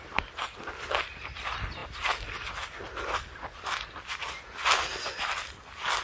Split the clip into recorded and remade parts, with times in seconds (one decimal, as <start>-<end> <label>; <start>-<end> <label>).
0.0-6.0 recorded